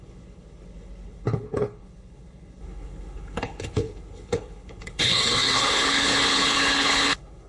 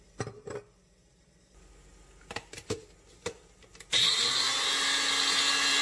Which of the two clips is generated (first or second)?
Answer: first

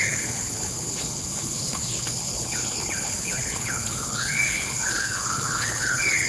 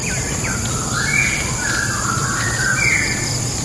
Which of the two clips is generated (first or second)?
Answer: first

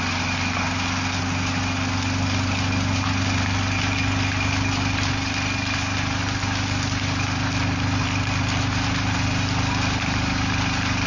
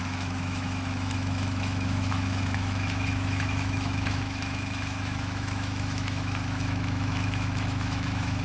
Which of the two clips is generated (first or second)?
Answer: second